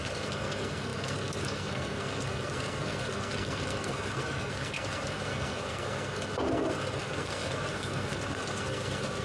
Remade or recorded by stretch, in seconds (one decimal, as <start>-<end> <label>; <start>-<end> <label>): 0.0-9.2 remade